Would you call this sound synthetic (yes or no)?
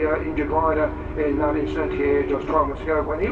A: no